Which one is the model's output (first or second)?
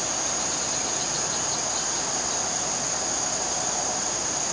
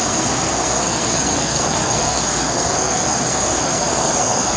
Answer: second